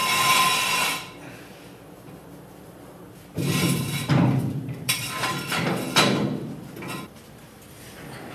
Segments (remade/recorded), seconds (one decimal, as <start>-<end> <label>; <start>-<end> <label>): 0.0-8.3 remade